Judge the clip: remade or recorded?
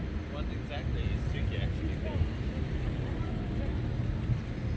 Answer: recorded